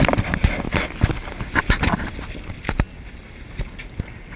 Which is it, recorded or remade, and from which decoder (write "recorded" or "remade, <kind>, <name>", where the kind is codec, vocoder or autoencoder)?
recorded